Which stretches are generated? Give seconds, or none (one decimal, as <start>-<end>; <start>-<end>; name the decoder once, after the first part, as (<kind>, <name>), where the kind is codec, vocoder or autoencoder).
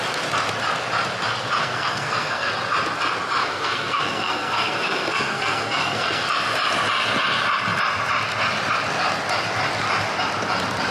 1.6-2.5 (codec, SNAC); 3.4-6.3